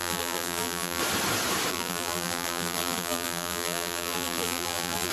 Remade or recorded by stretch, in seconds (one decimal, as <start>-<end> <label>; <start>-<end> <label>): 0.0-1.0 remade; 1.0-1.7 recorded; 1.7-5.1 remade